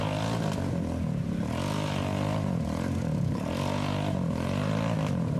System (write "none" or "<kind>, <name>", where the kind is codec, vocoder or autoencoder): none